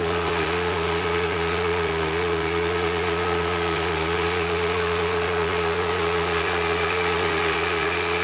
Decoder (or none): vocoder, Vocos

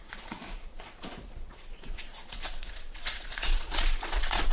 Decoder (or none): vocoder, Vocos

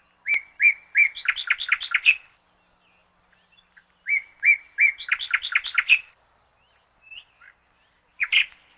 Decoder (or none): none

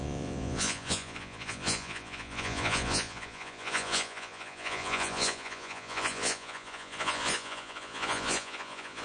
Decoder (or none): vocoder, Vocos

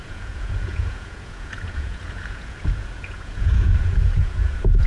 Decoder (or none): vocoder, Vocos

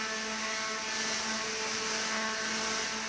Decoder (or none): none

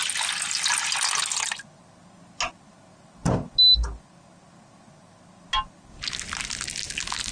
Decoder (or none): none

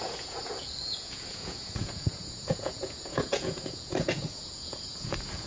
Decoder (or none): vocoder, Vocos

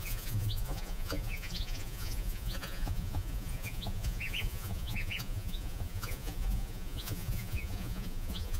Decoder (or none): vocoder, Vocos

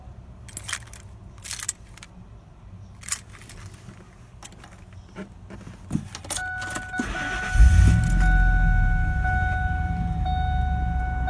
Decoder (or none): none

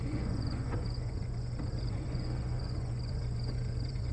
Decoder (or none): vocoder, Vocos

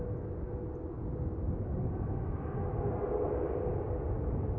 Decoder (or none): none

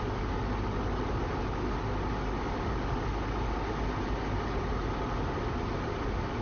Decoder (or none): none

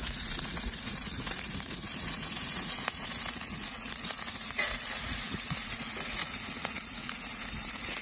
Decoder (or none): vocoder, Vocos